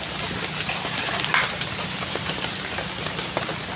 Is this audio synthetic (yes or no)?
no